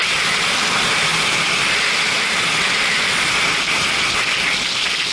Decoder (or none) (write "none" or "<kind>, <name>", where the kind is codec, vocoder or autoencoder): none